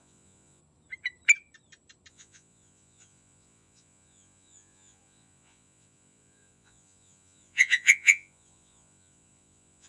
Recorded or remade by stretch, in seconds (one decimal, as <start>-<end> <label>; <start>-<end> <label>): 0.0-0.6 remade; 0.6-2.1 recorded; 2.1-9.9 remade